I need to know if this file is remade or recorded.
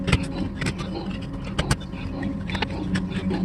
recorded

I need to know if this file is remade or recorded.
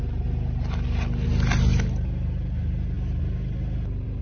recorded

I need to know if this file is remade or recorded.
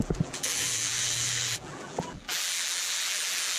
remade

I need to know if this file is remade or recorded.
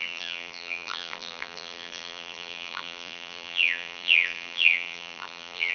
remade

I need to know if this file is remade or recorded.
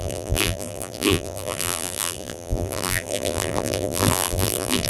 remade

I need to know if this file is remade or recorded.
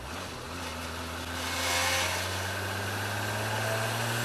recorded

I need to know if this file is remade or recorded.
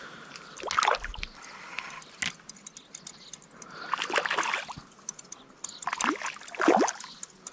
recorded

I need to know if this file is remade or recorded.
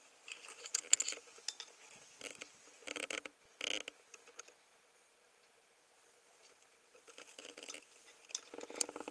recorded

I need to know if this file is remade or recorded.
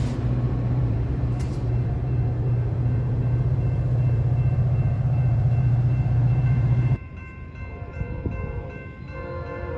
remade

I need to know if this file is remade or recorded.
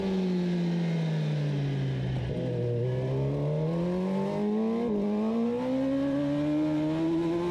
recorded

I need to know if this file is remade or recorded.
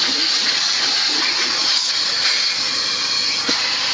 recorded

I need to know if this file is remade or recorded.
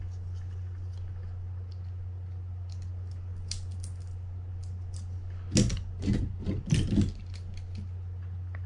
recorded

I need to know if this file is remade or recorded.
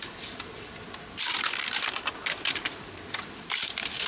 remade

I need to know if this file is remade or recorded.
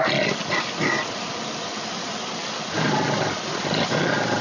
recorded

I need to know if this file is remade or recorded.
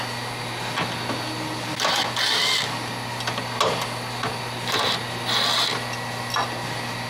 recorded